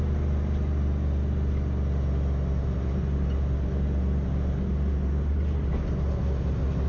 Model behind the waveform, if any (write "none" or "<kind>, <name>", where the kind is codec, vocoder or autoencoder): none